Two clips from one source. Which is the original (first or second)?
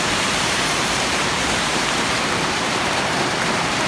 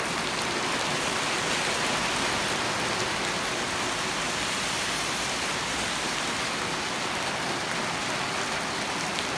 second